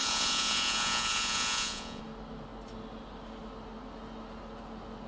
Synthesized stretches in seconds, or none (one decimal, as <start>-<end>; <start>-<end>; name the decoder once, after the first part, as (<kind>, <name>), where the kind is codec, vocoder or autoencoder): 0.0-2.0 (vocoder, Vocos)